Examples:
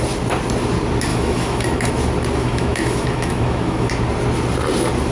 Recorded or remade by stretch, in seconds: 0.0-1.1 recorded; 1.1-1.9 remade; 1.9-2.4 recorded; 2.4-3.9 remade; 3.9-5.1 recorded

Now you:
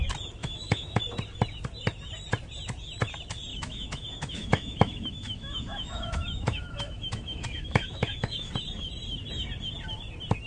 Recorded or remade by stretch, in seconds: 0.0-0.4 recorded; 0.4-1.0 remade; 1.0-3.5 recorded; 3.5-8.5 remade; 8.5-10.5 recorded

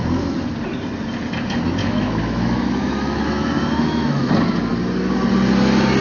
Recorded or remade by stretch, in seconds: 0.0-1.8 recorded; 1.8-4.3 remade; 4.3-6.0 recorded